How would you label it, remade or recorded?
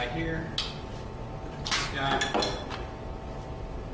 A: recorded